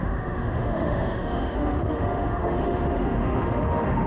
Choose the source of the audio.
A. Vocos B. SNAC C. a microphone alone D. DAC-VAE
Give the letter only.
D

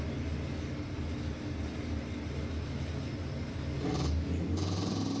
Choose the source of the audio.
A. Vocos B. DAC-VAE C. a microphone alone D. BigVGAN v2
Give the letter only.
C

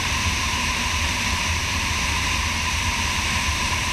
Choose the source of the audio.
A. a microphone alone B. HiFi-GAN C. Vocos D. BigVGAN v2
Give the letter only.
D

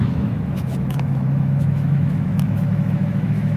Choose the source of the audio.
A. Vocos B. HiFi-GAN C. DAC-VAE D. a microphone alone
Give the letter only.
C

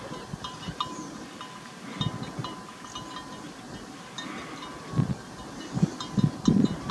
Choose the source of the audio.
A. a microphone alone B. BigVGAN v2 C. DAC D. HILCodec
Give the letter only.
A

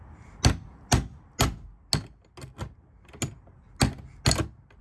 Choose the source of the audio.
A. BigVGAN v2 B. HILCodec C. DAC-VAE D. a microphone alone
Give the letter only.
D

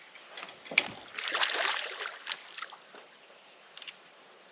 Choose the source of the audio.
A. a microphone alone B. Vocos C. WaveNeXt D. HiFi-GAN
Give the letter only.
A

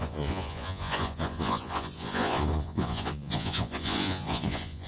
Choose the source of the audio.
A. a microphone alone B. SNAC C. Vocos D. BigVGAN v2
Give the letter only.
C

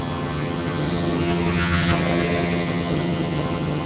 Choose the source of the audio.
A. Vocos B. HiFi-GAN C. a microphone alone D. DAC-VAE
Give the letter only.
B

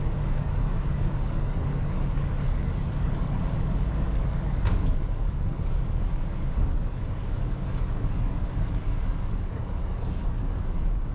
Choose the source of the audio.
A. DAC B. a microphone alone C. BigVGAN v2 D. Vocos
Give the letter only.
A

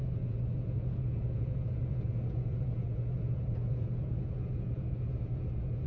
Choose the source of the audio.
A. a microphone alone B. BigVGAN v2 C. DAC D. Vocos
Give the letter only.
D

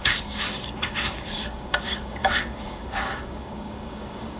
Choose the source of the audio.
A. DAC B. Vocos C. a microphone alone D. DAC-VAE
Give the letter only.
A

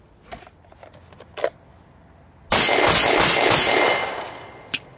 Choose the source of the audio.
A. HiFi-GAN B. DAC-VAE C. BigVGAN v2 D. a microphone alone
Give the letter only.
D